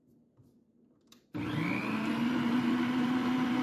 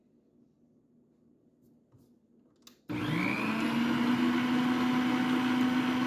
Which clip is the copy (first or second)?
first